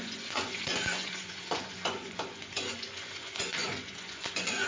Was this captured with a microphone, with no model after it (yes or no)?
no